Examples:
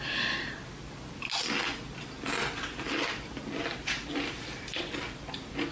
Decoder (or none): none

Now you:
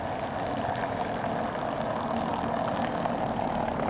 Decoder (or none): none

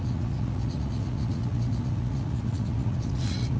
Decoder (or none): vocoder, Vocos